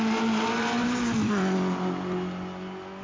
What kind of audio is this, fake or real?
real